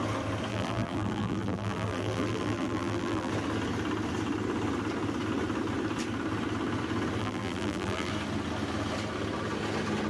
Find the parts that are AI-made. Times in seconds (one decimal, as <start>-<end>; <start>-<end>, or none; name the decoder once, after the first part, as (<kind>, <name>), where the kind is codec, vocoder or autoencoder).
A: 0.5-3.3 (vocoder, BigVGAN v2); 7.2-8.1